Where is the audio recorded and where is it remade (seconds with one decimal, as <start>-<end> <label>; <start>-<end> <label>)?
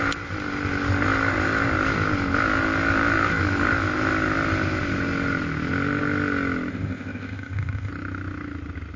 0.0-6.7 recorded; 6.7-7.9 remade; 7.9-9.0 recorded